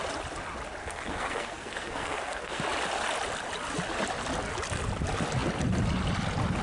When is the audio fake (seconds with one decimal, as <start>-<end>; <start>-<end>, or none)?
0.8-2.6

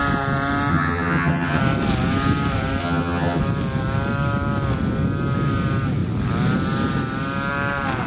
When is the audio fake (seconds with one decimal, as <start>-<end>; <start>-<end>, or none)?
0.7-1.6; 2.8-3.4

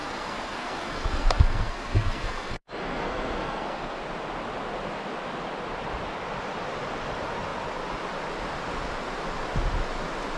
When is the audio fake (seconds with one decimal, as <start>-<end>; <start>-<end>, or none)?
0.0-4.0

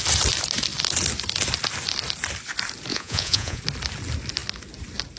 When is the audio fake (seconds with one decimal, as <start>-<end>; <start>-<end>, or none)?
2.9-3.6

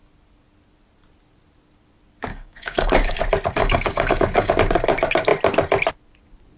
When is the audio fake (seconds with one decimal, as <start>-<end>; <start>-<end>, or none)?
2.3-3.2; 3.6-4.5

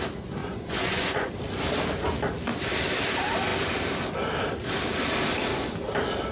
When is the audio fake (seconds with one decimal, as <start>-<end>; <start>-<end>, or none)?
0.4-1.3

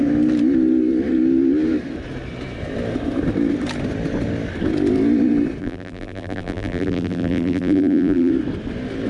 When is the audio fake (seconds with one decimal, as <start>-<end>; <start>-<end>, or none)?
5.6-8.3

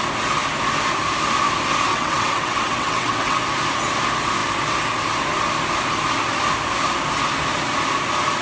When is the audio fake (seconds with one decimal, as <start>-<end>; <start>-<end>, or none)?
1.9-3.4